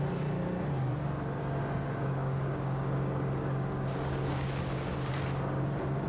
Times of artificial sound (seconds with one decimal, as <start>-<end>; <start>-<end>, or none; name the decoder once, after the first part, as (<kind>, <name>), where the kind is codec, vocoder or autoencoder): 1.4-5.1 (codec, DAC)